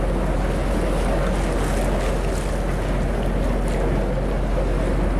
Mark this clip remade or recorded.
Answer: recorded